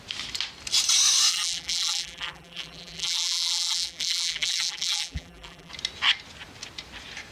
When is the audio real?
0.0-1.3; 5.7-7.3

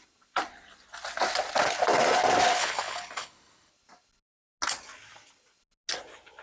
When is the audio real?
0.0-2.6; 3.7-6.4

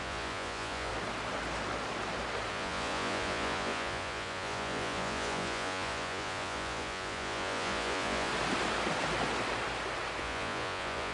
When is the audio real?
0.9-2.5; 8.3-10.2

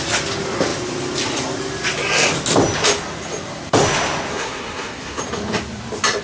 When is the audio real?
0.0-4.3; 5.2-6.2